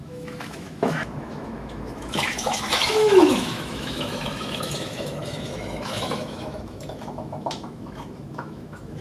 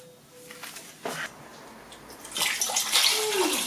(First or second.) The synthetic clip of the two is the first